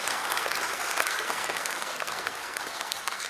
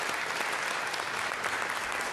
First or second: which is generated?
first